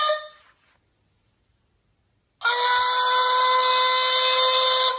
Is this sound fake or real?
real